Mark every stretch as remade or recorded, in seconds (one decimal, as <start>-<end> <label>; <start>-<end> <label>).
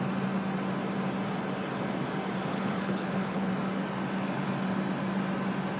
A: 0.0-2.5 recorded; 2.5-3.5 remade; 3.5-5.8 recorded